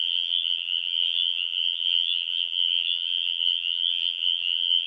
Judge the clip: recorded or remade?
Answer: remade